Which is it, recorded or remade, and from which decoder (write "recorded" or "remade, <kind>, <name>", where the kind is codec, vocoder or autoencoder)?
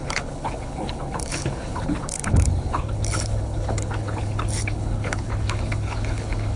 remade, codec, HILCodec